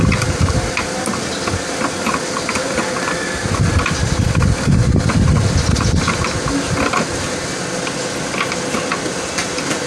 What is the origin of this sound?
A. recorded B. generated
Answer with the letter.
A